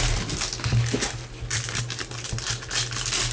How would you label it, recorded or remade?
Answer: recorded